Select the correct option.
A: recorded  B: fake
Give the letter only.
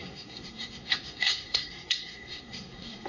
B